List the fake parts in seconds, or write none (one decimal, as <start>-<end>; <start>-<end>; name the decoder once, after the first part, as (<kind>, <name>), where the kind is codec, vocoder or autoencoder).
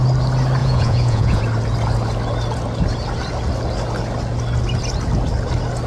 0.6-1.4 (vocoder, Vocos)